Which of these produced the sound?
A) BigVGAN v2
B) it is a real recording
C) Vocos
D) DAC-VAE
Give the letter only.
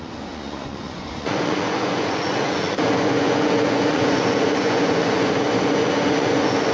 C